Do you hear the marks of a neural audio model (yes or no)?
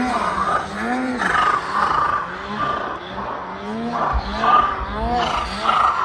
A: no